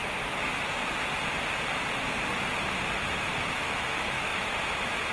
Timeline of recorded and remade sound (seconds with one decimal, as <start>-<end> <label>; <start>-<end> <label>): 0.0-3.1 recorded; 3.1-5.1 remade